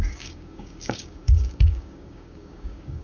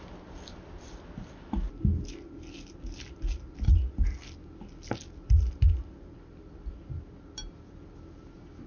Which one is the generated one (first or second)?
first